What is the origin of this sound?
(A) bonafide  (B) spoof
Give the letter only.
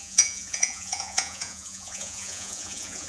B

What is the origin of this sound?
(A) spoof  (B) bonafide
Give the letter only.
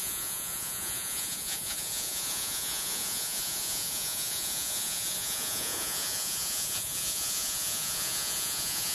A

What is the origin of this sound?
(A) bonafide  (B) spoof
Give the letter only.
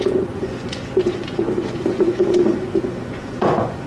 B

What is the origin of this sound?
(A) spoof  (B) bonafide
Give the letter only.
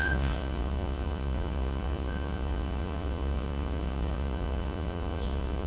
A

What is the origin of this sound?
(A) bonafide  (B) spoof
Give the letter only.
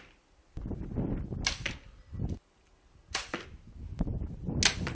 A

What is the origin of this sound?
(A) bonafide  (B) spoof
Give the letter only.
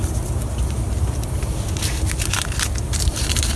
A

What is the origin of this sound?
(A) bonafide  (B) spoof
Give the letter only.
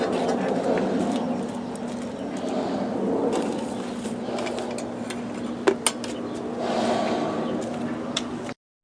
A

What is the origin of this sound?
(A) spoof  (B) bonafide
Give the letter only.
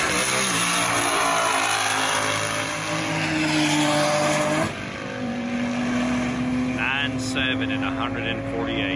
B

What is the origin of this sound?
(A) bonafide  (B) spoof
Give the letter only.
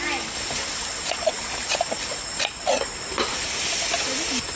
A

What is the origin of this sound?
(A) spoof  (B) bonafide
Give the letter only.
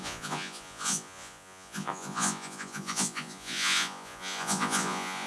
A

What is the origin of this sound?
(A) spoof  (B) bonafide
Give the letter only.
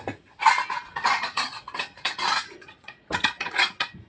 A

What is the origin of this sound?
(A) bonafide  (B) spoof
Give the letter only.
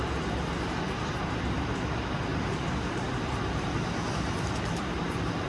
A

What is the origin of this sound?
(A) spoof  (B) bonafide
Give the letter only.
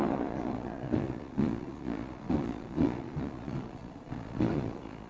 A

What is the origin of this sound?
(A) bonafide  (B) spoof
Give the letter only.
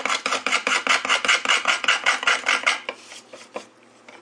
A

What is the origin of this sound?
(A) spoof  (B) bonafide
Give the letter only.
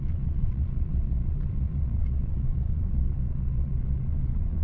A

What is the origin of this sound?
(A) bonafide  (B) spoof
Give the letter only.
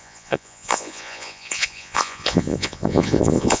B